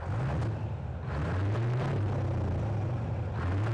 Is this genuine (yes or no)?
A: yes